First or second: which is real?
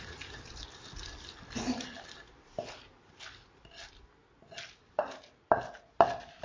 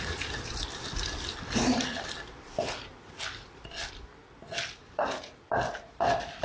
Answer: first